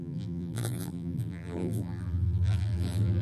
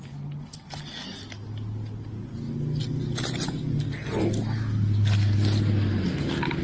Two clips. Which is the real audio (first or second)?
second